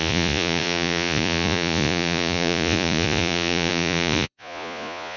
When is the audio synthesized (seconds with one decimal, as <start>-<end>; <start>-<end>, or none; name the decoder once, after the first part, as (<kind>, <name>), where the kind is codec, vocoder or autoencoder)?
0.0-5.2 (vocoder, Vocos)

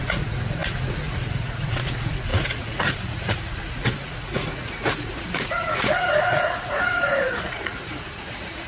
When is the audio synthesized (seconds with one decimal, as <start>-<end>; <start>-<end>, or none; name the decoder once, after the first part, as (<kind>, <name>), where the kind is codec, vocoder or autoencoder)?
0.0-8.7 (vocoder, Vocos)

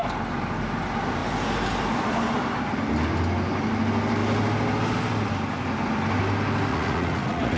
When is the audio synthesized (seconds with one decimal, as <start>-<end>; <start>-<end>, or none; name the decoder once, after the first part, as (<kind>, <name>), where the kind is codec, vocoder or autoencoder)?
6.7-7.6 (vocoder, Vocos)

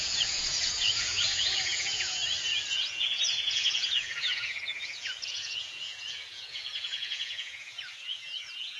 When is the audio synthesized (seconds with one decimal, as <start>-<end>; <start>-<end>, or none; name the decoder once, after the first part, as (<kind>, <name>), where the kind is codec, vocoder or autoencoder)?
0.0-2.2 (vocoder, Vocos); 2.7-8.8